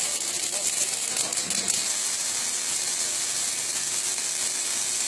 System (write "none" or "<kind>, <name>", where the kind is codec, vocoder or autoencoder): none